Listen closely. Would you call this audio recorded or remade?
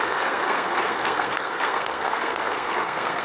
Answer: remade